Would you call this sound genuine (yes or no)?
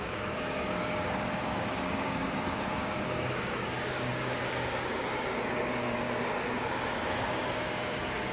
no